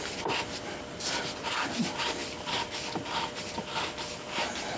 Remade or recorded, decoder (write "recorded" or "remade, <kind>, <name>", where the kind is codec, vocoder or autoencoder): recorded